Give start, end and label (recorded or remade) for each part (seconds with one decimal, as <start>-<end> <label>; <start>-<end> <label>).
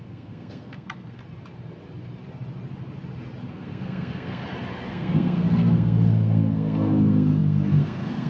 0.0-1.2 remade; 1.2-3.5 recorded; 3.5-4.4 remade; 4.4-4.9 recorded; 4.9-8.3 remade